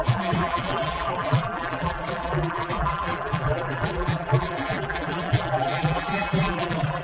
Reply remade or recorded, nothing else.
remade